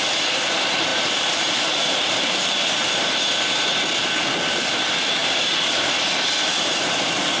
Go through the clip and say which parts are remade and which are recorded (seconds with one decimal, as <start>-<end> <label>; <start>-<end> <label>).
0.0-0.9 recorded; 0.9-3.2 remade; 3.2-5.2 recorded; 5.2-5.8 remade; 5.8-7.4 recorded